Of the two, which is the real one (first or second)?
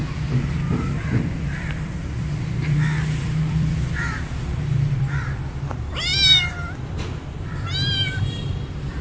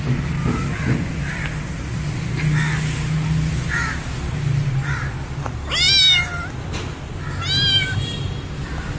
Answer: second